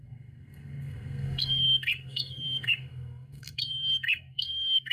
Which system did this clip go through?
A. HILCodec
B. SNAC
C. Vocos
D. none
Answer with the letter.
B